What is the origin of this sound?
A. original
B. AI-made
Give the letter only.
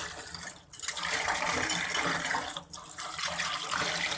A